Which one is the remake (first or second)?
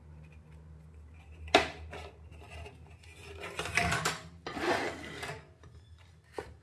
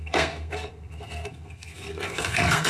second